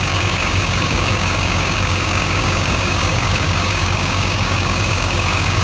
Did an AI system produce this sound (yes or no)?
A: yes